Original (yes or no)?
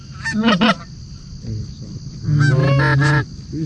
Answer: yes